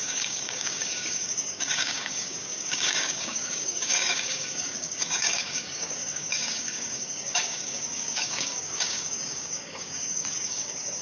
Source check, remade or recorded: remade